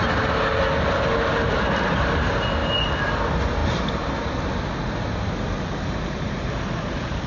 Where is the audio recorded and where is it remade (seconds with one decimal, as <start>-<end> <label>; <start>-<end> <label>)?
0.0-7.3 recorded

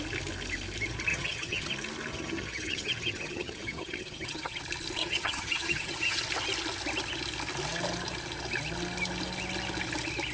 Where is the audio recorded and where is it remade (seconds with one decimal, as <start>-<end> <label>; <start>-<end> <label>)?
0.0-1.1 recorded; 1.1-1.7 remade; 1.7-2.1 recorded; 2.1-4.6 remade; 4.6-5.0 recorded; 5.0-6.2 remade; 6.2-10.3 recorded

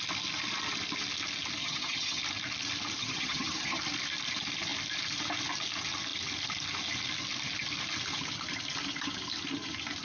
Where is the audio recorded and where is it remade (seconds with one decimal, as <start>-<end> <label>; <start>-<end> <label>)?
0.0-1.6 recorded; 1.6-2.2 remade; 2.2-3.0 recorded; 3.0-3.8 remade; 3.8-10.0 recorded

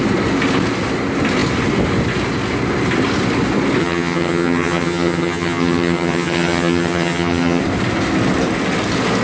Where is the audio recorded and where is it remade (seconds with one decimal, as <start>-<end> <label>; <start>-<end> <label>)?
0.0-3.8 recorded; 3.8-7.6 remade; 7.6-9.2 recorded

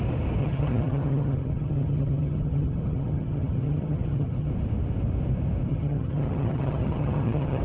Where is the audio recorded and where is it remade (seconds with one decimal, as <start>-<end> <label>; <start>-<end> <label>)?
0.0-0.4 recorded; 0.4-4.5 remade; 4.5-5.7 recorded; 5.7-7.6 remade

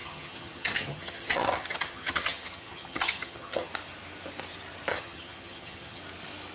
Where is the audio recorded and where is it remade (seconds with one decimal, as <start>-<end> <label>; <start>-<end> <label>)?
0.0-3.7 remade; 3.7-4.9 recorded; 4.9-6.0 remade; 6.0-6.5 recorded